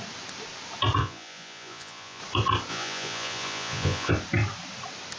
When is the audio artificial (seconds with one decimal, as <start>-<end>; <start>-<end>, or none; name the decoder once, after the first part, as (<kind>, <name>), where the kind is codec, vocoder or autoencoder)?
1.0-2.2 (vocoder, Vocos); 2.7-4.1